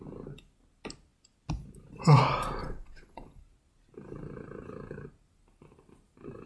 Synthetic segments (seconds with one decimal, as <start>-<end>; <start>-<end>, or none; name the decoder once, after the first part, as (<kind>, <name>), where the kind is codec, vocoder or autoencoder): 2.6-3.4 (vocoder, WaveNeXt)